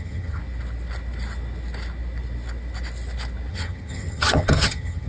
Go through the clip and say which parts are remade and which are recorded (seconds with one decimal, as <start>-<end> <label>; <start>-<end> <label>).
0.0-0.4 remade; 0.4-3.5 recorded; 3.5-5.1 remade